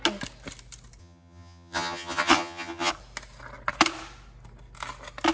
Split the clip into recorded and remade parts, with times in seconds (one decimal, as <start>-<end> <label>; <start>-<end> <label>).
0.0-1.0 recorded; 1.0-2.9 remade; 2.9-5.3 recorded